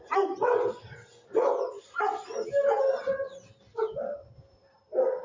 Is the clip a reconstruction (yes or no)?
no